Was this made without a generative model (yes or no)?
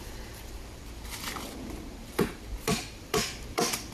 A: no